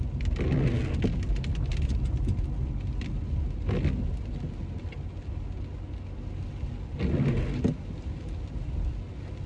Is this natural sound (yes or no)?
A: yes